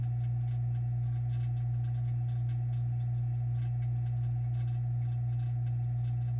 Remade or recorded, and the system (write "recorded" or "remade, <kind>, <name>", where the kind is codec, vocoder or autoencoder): recorded